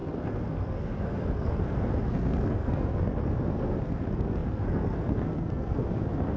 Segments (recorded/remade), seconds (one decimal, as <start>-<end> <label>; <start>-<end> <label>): 0.0-6.4 remade